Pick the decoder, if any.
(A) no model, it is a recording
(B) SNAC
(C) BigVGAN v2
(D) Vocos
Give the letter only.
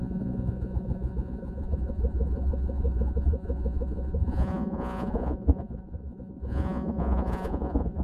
D